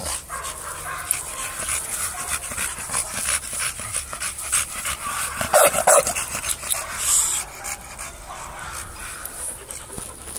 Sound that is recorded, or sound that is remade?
recorded